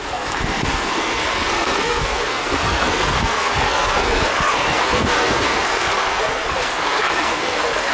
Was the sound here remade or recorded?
remade